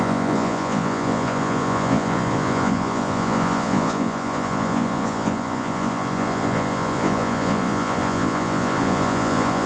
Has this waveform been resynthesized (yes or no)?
yes